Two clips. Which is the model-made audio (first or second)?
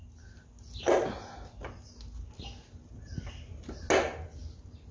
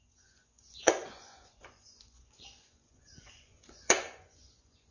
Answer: second